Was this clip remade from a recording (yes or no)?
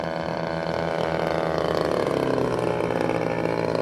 no